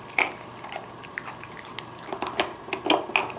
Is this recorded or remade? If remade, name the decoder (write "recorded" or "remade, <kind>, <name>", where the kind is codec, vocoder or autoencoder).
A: recorded